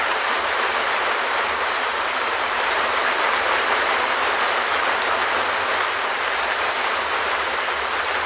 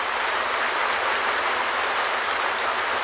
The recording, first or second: second